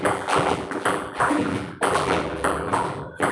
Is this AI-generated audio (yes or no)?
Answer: yes